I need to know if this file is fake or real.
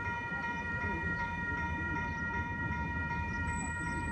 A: fake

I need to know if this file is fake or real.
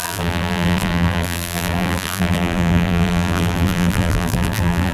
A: fake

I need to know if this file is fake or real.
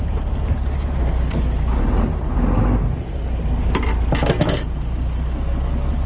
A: real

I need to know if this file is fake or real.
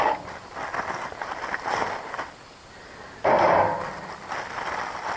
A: real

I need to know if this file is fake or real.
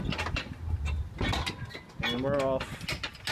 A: real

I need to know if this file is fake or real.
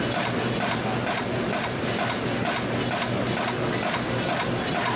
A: real